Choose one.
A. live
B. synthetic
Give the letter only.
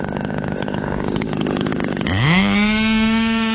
B